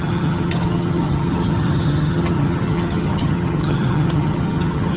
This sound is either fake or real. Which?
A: fake